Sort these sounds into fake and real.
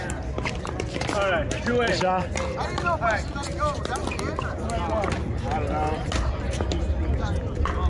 real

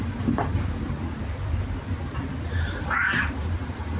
real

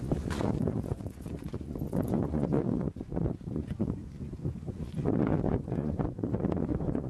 fake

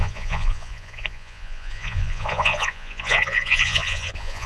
fake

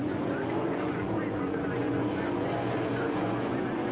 fake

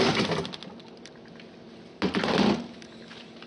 real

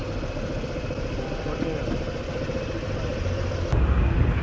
real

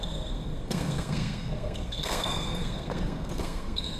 fake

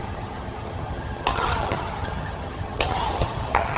fake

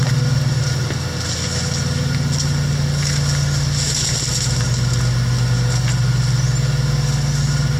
real